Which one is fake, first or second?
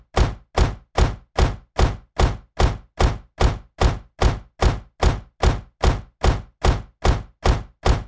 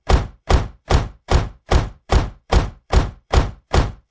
second